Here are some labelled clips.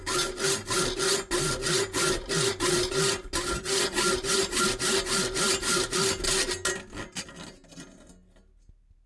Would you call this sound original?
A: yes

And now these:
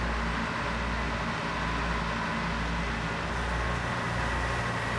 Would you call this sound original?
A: yes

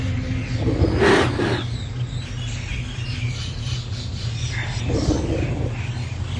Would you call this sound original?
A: yes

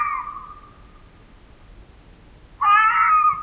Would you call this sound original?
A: yes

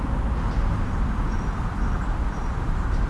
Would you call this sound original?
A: yes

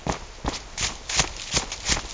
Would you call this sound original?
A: yes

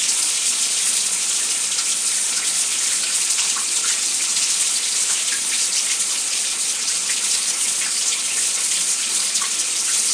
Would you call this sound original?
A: no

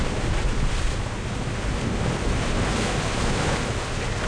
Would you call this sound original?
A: yes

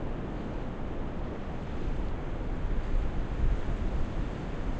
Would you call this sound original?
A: yes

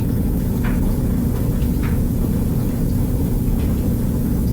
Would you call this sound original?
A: no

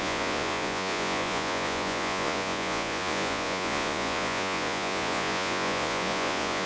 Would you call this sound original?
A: no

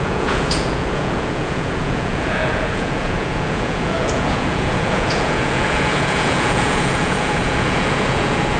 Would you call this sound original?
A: no